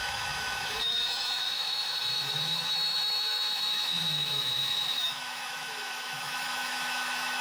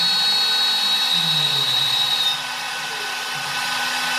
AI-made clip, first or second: first